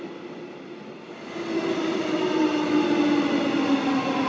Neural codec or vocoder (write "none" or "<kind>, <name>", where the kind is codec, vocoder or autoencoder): none